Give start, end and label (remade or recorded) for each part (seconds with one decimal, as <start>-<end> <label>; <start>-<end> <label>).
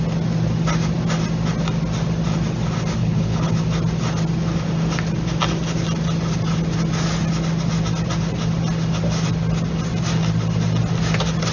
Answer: 0.0-3.0 recorded; 3.0-3.6 remade; 3.6-11.5 recorded